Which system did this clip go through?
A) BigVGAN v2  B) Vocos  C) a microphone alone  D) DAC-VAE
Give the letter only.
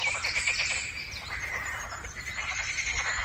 A